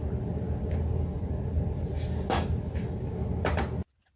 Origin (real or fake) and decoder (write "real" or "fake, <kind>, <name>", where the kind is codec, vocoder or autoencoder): real